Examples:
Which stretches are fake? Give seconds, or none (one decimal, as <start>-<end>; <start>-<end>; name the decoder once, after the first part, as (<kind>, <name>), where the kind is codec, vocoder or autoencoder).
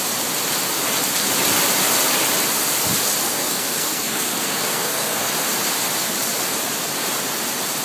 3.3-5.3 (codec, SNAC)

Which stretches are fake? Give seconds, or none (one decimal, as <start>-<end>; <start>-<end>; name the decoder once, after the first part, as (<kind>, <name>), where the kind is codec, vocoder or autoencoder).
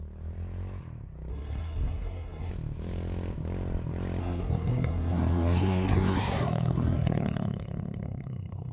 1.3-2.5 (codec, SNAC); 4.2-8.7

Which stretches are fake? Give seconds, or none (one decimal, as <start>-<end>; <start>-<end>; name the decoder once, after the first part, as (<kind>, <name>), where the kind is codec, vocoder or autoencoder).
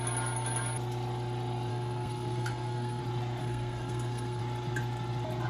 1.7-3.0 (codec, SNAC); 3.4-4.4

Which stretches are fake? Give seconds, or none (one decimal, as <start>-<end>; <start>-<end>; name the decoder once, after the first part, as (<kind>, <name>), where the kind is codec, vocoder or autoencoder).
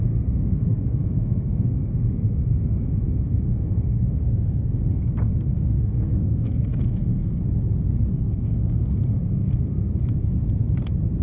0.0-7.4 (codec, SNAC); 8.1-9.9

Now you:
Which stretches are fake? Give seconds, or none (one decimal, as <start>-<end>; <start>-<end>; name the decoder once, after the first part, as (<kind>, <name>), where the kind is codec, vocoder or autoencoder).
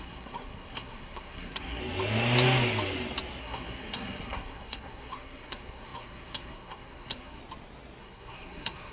0.0-1.8 (codec, SNAC); 3.4-7.4; 8.0-8.9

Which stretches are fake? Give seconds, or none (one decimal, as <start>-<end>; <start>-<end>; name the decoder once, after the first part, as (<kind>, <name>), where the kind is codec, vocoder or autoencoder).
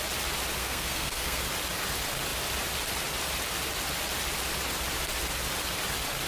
0.6-1.4 (codec, SNAC)